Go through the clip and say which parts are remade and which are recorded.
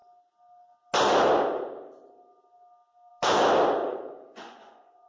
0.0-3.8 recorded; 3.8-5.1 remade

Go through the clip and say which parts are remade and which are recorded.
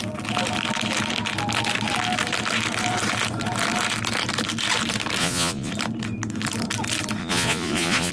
0.0-5.2 recorded; 5.2-5.7 remade; 5.7-7.2 recorded; 7.2-8.1 remade